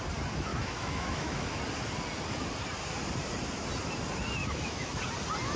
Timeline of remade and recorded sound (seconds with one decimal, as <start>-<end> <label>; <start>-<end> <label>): 0.0-0.5 recorded; 0.5-1.6 remade; 1.6-4.4 recorded; 4.4-5.0 remade; 5.0-5.6 recorded